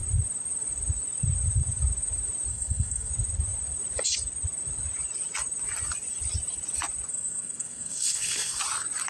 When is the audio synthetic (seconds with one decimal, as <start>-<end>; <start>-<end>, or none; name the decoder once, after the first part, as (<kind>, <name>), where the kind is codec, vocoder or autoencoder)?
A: 2.5-3.1 (codec, SNAC); 7.1-8.6